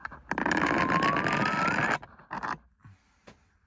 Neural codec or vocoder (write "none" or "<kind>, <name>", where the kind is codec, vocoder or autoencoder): none